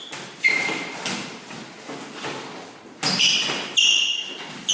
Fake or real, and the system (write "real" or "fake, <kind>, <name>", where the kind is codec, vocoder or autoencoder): real